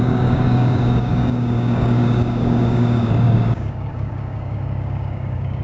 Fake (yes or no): yes